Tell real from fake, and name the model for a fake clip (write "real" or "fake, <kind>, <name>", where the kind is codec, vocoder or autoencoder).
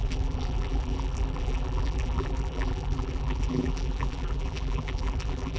fake, vocoder, BigVGAN v2